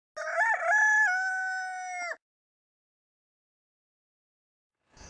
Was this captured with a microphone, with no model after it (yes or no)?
yes